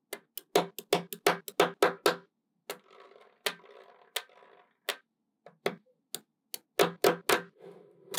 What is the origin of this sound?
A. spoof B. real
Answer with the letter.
B